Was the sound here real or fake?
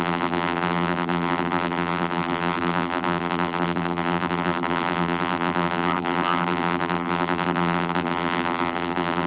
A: fake